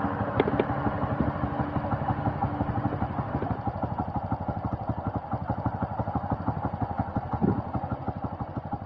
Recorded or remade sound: recorded